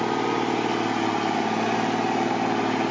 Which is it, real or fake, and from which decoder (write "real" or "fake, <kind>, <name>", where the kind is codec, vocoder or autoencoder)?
real